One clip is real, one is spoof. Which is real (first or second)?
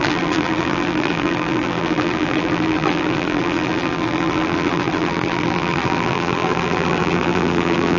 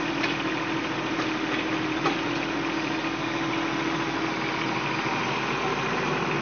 second